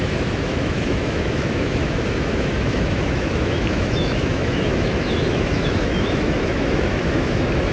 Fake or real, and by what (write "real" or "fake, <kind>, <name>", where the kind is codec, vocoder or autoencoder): fake, autoencoder, DAC-VAE